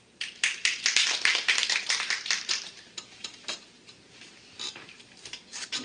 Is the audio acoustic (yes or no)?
no